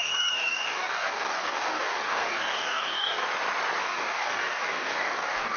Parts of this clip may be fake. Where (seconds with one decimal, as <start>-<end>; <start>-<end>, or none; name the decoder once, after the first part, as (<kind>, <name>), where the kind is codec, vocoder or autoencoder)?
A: 0.0-3.2 (codec, DAC); 3.8-5.6